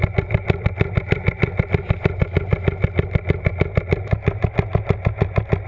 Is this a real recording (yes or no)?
yes